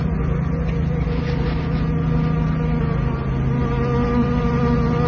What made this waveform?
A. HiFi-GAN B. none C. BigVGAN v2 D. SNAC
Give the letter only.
B